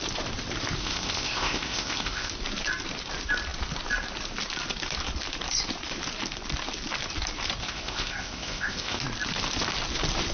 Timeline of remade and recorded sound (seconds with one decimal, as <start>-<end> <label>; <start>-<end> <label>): 0.0-0.8 recorded; 0.8-2.3 remade; 2.3-7.6 recorded; 7.6-9.0 remade; 9.0-10.3 recorded